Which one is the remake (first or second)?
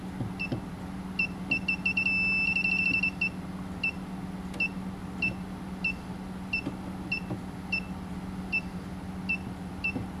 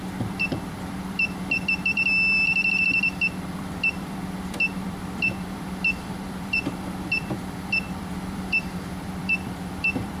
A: second